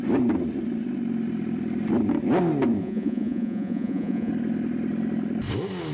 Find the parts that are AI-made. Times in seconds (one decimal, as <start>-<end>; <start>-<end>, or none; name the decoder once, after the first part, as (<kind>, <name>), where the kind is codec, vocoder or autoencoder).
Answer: 2.8-4.3 (vocoder, Vocos)